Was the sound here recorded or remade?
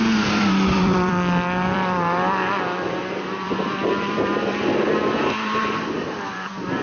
remade